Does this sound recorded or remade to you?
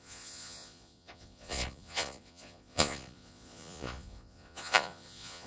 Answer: remade